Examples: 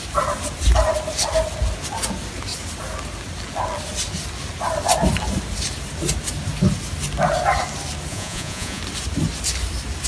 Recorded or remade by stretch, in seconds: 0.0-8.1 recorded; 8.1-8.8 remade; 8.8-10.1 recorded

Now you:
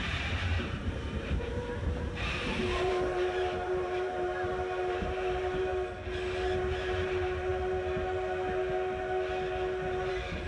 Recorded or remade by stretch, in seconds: 0.0-5.7 remade; 5.7-6.6 recorded; 6.6-7.5 remade; 7.5-10.1 recorded; 10.1-10.5 remade

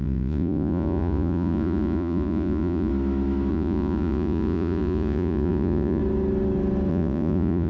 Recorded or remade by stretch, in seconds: 0.0-2.9 remade; 2.9-3.5 recorded; 3.5-6.0 remade; 6.0-6.9 recorded; 6.9-7.7 remade

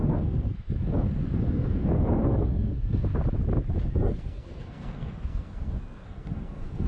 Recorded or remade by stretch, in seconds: 0.0-3.1 remade; 3.1-3.8 recorded; 3.8-6.9 remade

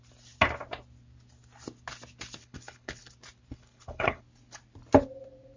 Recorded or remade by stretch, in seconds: 0.0-2.4 recorded; 2.4-3.1 remade; 3.1-3.5 recorded; 3.5-4.2 remade; 4.2-5.6 recorded

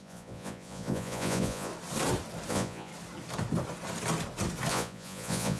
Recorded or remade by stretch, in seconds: 0.0-1.7 remade; 1.7-2.5 recorded; 2.5-2.9 remade; 2.9-4.7 recorded; 4.7-5.6 remade

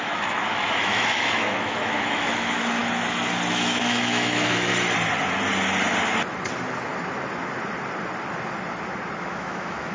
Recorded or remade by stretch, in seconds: 0.0-2.8 remade; 2.8-3.5 recorded; 3.5-4.7 remade; 4.7-9.2 recorded; 9.2-9.9 remade

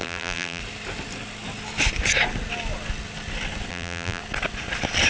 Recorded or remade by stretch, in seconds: 0.0-0.6 remade; 0.6-3.7 recorded; 3.7-4.2 remade; 4.2-5.1 recorded